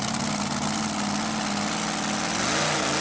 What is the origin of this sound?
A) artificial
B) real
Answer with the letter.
B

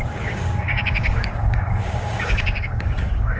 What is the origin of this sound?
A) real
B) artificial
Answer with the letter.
B